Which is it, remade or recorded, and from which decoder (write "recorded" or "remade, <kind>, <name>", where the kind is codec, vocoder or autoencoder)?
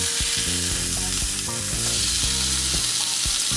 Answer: recorded